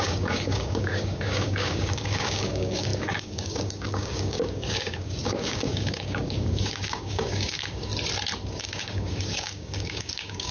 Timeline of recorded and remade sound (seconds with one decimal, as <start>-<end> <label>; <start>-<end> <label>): 0.0-7.9 remade; 7.9-8.5 recorded; 8.5-10.5 remade